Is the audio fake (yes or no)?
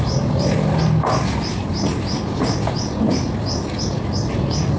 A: no